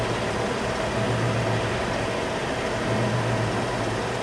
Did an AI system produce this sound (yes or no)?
no